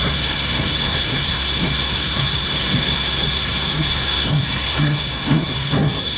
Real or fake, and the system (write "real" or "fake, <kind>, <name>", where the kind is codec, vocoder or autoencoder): fake, codec, SNAC